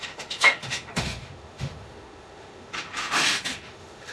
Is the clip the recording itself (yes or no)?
no